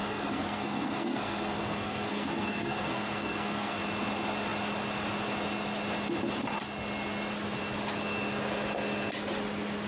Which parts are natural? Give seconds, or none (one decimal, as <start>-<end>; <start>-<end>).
3.8-9.9